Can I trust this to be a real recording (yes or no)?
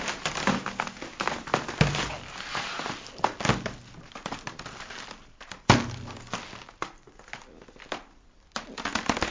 yes